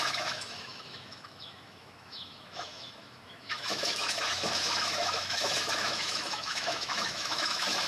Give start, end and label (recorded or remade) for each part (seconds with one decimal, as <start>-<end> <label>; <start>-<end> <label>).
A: 0.0-7.9 remade